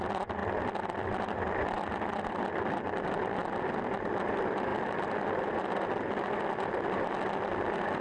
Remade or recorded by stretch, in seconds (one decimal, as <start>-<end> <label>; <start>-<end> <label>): 0.0-8.0 recorded

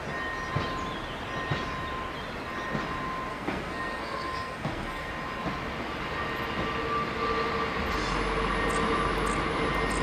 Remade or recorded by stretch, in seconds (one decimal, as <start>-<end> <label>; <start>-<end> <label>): 0.0-3.3 recorded; 3.3-5.1 remade; 5.1-10.0 recorded

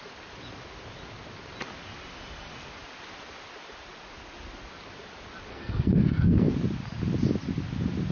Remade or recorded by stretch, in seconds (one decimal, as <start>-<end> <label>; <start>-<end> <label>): 0.0-5.5 recorded; 5.5-6.5 remade; 6.5-8.1 recorded

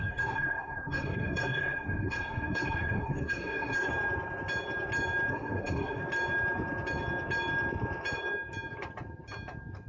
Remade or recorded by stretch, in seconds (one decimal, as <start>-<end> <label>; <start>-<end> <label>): 0.0-3.9 remade; 3.9-5.3 recorded; 5.3-6.0 remade; 6.0-9.9 recorded

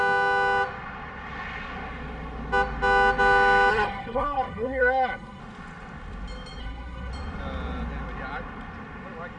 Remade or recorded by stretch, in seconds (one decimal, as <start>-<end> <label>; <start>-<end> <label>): 0.0-3.7 recorded; 3.7-5.4 remade; 5.4-6.6 recorded; 6.6-7.1 remade; 7.1-9.4 recorded

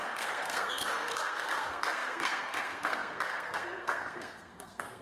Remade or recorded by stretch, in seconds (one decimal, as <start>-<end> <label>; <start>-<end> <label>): 0.0-5.0 remade

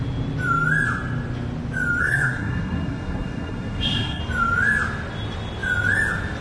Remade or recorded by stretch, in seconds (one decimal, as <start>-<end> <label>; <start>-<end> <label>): 0.0-2.0 recorded; 2.0-4.2 remade; 4.2-6.4 recorded